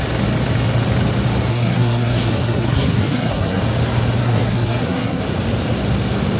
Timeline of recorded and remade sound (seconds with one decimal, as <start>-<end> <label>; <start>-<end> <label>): 0.0-1.5 recorded; 1.5-3.6 remade; 3.6-4.2 recorded; 4.2-5.2 remade; 5.2-6.4 recorded